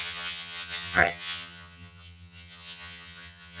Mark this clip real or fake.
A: fake